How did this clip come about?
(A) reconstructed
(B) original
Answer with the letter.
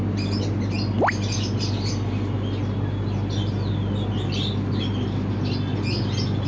B